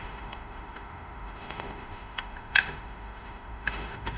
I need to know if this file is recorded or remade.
remade